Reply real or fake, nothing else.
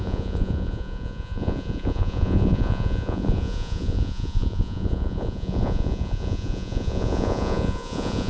fake